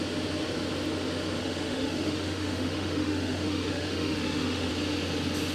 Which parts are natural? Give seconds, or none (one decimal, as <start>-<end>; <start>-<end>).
0.0-1.4; 4.7-5.5

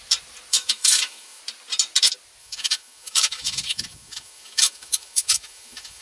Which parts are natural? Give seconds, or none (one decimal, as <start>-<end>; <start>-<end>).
0.0-0.5; 1.4-2.4

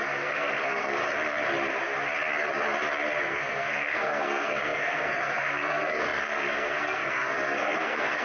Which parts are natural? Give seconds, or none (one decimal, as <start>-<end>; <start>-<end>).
1.0-3.2

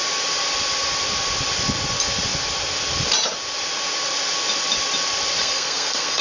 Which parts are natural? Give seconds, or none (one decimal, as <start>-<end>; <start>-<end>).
0.0-5.4